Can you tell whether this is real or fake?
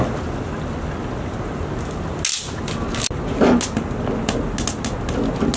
real